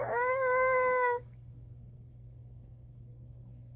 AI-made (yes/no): yes